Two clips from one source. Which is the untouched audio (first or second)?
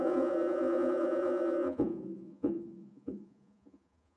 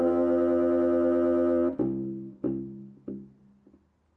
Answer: second